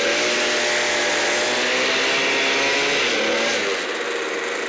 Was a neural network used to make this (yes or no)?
no